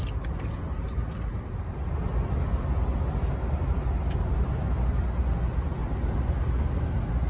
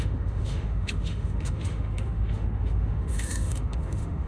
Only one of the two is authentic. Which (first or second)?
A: first